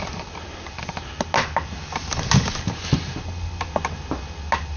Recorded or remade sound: recorded